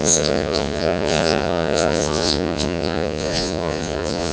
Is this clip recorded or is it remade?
remade